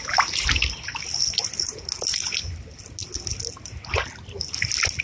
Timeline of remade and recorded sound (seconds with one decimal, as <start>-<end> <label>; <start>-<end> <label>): 0.0-5.0 recorded